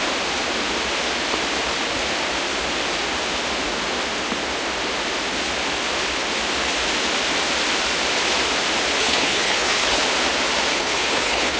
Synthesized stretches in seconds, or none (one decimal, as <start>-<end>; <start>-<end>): 9.0-10.0; 10.7-11.6